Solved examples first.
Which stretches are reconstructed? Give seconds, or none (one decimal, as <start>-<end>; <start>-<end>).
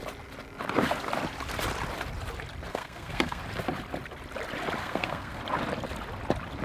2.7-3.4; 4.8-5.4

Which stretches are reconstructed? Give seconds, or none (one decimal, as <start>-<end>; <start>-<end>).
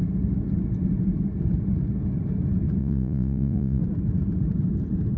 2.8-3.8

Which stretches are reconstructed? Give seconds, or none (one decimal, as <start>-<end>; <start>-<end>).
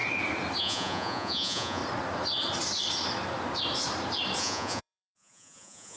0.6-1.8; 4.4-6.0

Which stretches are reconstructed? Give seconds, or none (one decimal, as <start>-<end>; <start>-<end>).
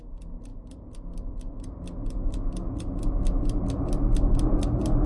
none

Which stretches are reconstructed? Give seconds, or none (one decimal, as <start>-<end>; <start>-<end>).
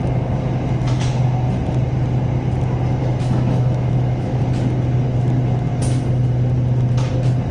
3.0-4.4